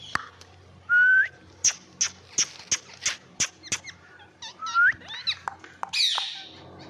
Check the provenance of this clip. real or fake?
real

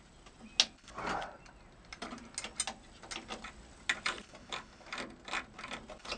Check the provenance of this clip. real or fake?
real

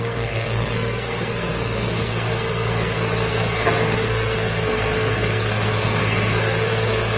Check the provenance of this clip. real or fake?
fake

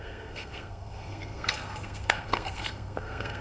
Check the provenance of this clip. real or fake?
fake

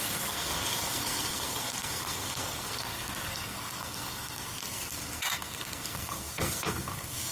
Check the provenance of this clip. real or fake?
fake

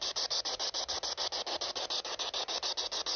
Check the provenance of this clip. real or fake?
real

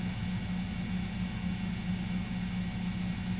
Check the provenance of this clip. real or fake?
real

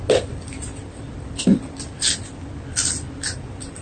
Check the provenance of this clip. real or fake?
real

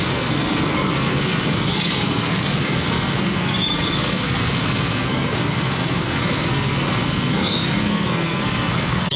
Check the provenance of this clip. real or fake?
fake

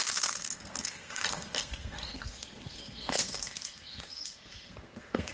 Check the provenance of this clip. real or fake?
fake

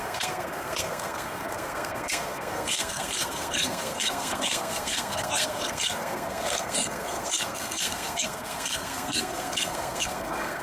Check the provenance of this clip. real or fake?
fake